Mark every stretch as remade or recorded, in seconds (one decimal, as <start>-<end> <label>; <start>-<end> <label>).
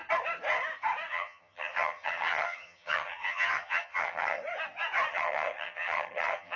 0.0-1.1 recorded; 1.1-4.4 remade; 4.4-5.1 recorded; 5.1-6.6 remade